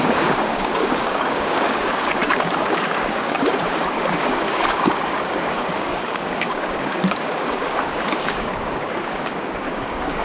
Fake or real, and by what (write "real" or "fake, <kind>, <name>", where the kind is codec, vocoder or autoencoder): fake, codec, DAC